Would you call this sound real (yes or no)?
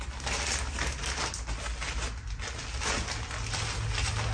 yes